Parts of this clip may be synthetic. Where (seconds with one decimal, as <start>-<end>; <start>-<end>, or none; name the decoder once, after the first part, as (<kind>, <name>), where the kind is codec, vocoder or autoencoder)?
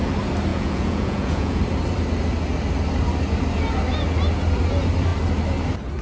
0.5-1.6 (vocoder, Vocos)